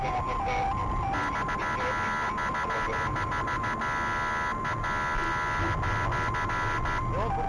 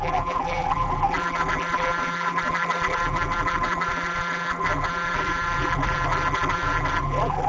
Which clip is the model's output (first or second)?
second